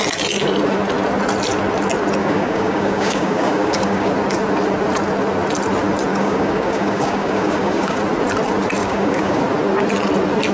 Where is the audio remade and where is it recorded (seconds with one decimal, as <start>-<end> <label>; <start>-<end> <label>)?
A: 0.0-2.2 recorded; 2.2-4.1 remade; 4.1-6.1 recorded; 6.1-8.0 remade; 8.0-8.8 recorded; 8.8-9.4 remade; 9.4-10.5 recorded